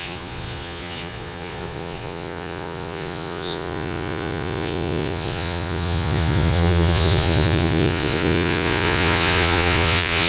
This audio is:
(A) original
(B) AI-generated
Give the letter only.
B